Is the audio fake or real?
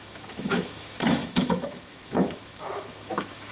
fake